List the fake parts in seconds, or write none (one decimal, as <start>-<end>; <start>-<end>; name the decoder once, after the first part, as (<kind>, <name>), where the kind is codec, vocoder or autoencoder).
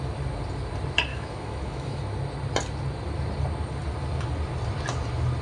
1.1-2.0 (autoencoder, DAC-VAE)